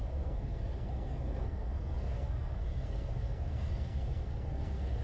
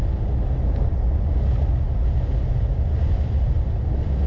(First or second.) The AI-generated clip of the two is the first